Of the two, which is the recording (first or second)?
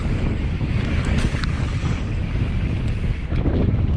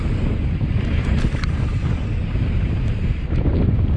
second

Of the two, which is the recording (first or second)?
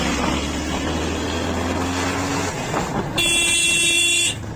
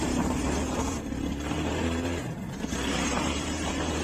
first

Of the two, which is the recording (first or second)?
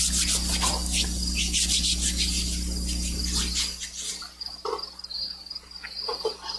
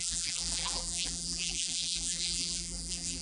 first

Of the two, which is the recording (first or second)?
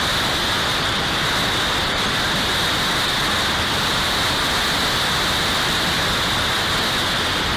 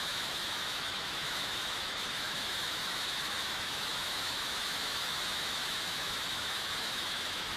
first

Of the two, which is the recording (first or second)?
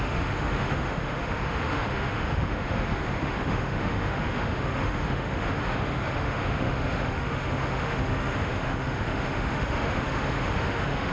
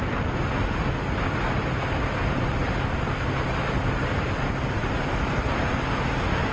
second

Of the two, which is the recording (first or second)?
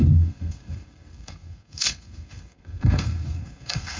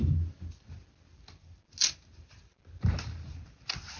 second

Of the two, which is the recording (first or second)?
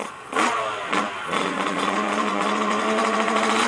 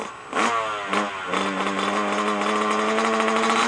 second